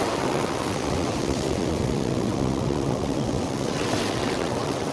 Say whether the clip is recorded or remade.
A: remade